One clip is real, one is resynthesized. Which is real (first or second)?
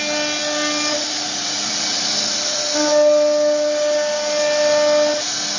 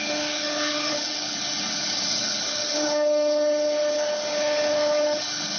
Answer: first